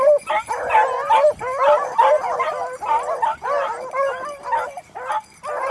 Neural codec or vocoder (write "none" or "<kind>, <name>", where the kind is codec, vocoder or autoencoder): none